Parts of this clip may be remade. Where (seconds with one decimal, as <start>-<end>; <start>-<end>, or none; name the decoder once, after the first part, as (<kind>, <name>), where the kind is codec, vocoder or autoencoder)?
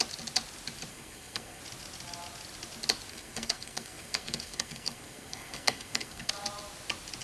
0.9-1.6 (codec, SNAC); 3.1-6.3